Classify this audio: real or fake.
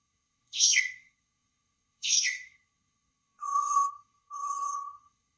fake